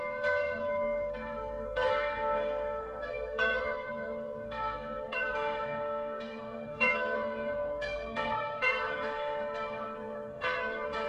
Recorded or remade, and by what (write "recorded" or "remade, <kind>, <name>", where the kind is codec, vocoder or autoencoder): remade, codec, SNAC